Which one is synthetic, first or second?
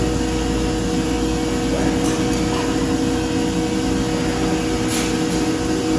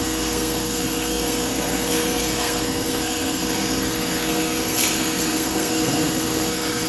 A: second